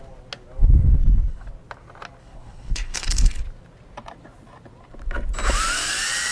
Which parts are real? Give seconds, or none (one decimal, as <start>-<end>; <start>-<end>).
0.0-1.0; 1.5-2.2; 3.4-6.3